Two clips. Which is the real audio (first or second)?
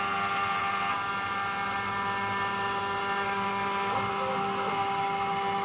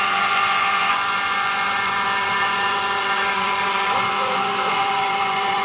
first